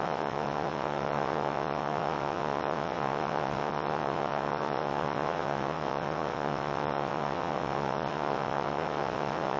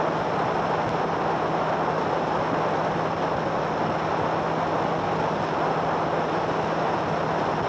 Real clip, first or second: second